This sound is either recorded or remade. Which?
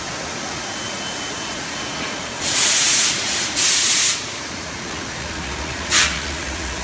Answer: remade